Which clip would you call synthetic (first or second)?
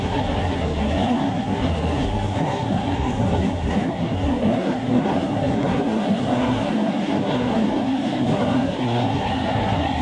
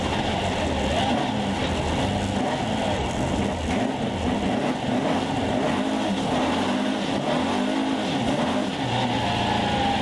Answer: first